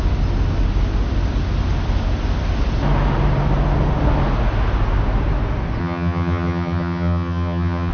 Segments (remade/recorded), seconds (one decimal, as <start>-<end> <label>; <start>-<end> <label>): 0.0-5.8 recorded; 5.8-7.9 remade